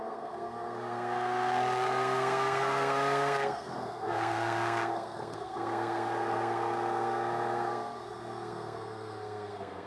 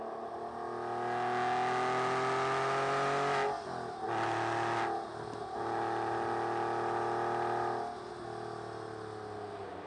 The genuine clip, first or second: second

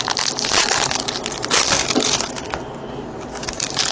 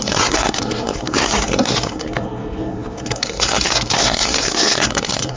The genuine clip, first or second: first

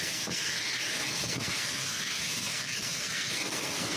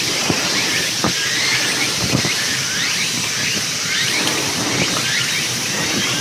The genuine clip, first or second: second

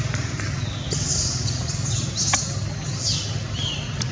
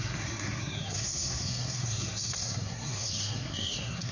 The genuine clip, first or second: first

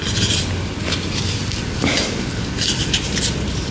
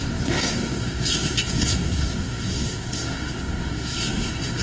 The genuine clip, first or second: first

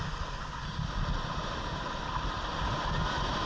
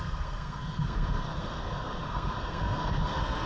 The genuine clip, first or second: first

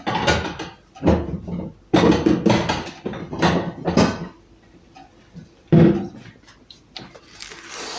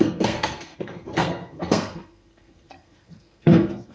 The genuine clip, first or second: first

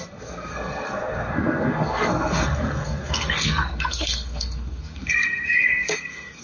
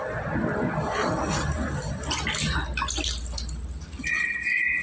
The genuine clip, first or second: second